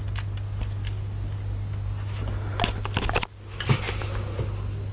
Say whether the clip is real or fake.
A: real